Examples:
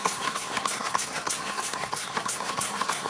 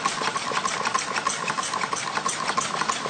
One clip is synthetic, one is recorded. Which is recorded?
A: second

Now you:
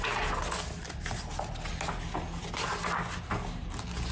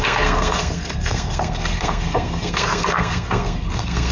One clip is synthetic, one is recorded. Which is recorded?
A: first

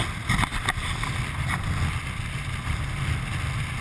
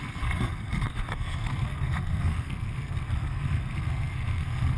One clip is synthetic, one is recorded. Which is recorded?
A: first